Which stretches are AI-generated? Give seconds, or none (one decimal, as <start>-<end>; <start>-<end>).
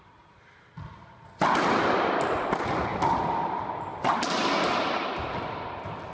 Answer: none